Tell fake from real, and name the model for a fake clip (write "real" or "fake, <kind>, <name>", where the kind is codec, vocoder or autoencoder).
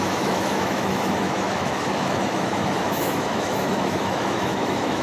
fake, autoencoder, DAC-VAE